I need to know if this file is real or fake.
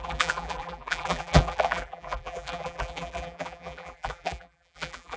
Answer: fake